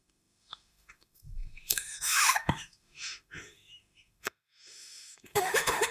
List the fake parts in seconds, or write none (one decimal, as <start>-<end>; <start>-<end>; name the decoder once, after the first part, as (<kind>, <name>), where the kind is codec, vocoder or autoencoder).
0.0-5.9 (autoencoder, DAC-VAE)